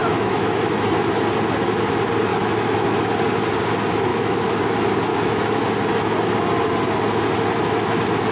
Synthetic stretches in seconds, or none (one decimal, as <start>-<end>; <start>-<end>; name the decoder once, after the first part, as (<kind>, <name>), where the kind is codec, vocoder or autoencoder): 0.0-0.9 (autoencoder, DAC-VAE); 2.3-3.0; 4.1-4.6; 5.1-5.6